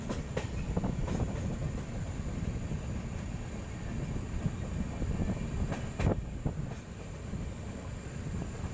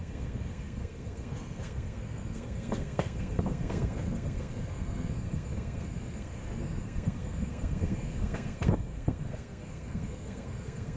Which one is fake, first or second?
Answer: second